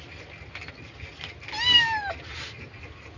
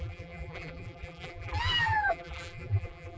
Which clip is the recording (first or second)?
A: first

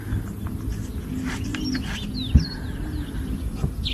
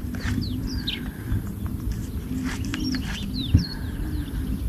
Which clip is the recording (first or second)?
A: first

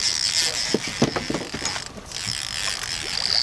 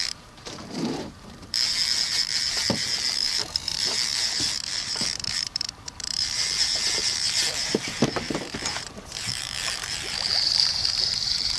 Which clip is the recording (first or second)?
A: first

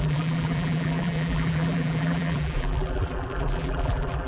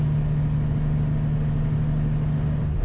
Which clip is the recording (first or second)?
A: second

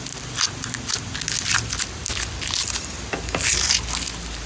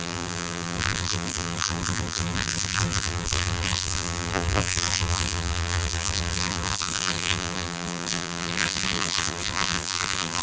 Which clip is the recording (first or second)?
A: first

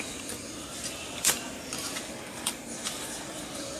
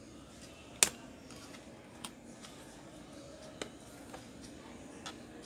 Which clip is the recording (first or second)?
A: second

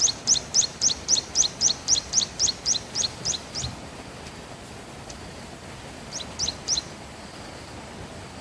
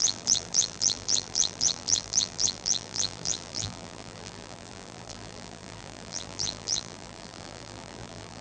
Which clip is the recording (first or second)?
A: first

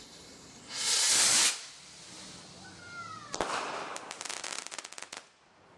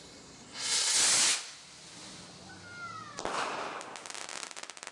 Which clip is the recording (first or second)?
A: second